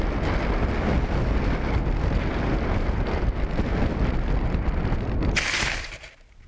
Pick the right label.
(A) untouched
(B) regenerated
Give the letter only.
A